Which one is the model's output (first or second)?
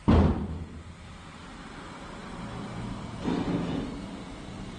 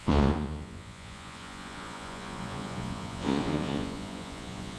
second